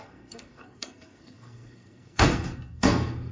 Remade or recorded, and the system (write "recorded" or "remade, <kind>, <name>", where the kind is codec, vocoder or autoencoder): remade, codec, SNAC